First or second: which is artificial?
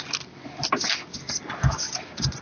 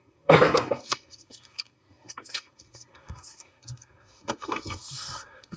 second